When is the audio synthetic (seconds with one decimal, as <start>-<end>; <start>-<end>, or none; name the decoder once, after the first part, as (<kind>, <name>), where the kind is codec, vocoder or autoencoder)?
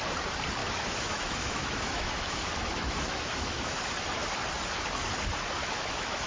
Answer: 0.6-3.7 (autoencoder, DAC-VAE); 5.6-6.3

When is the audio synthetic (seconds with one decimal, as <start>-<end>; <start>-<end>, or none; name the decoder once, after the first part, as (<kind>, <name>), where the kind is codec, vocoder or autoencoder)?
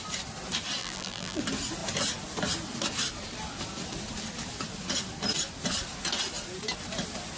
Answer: 0.8-1.4 (vocoder, BigVGAN v2)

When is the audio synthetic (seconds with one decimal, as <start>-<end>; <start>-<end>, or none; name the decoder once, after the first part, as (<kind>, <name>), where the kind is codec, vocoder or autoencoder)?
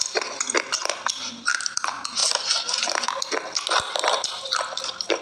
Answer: 0.0-0.8 (vocoder, BigVGAN v2); 1.5-2.2; 4.6-5.2